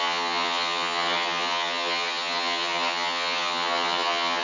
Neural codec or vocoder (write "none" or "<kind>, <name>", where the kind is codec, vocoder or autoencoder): vocoder, HiFi-GAN